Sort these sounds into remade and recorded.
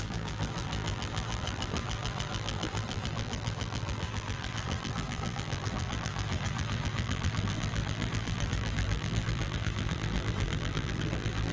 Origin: remade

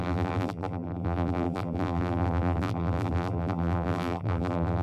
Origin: remade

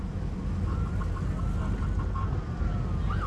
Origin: recorded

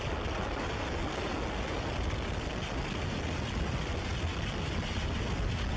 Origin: recorded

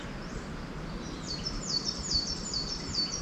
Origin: remade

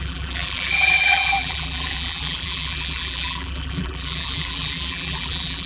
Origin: remade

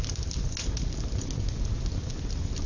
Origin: recorded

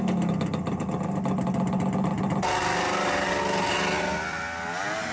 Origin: recorded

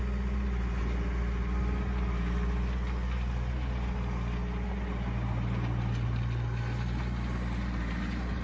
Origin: recorded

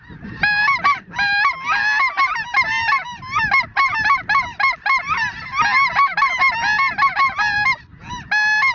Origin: recorded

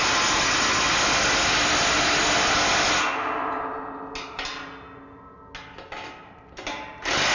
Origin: recorded